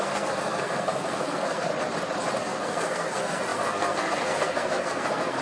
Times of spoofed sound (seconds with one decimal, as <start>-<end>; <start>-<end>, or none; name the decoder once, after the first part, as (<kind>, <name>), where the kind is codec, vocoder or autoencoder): 0.0-1.7 (codec, SNAC); 2.4-5.4